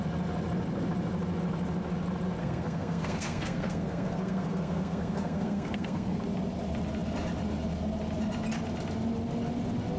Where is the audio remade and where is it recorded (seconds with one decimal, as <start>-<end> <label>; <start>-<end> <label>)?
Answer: 0.0-2.4 recorded; 2.4-6.2 remade; 6.2-10.0 recorded